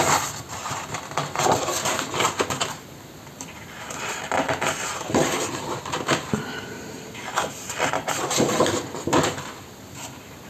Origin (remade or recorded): recorded